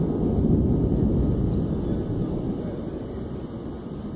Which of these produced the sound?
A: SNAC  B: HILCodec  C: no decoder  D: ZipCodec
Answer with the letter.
C